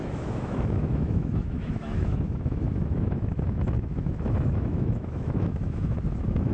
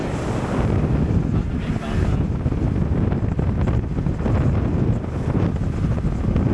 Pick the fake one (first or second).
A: first